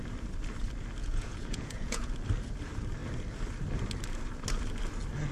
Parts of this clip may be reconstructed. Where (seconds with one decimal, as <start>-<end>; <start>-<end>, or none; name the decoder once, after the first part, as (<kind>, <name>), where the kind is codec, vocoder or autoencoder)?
1.0-2.1 (vocoder, Vocos)